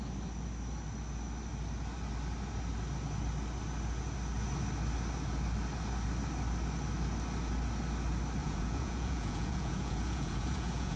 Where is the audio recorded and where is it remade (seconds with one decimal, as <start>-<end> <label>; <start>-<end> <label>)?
0.0-8.4 recorded; 8.4-11.0 remade